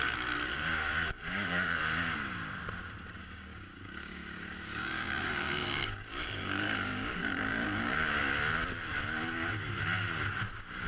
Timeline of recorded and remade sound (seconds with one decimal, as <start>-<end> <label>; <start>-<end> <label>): 0.0-0.5 recorded; 0.5-1.8 remade; 1.8-3.2 recorded; 3.2-8.2 remade; 8.2-10.9 recorded